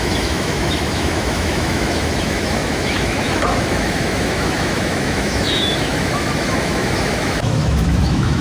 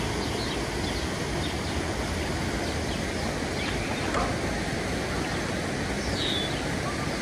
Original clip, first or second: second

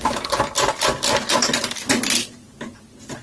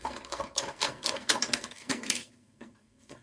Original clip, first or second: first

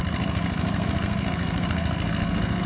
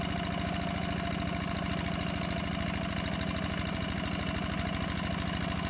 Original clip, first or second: second